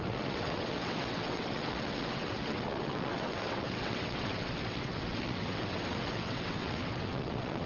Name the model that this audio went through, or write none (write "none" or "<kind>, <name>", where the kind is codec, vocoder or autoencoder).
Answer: vocoder, WaveNeXt